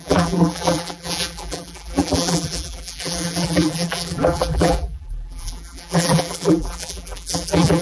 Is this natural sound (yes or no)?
no